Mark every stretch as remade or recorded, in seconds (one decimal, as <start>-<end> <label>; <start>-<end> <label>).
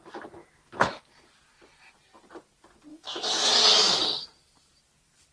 0.0-0.4 recorded; 0.4-1.0 remade; 1.0-2.9 recorded; 2.9-3.5 remade; 3.5-5.3 recorded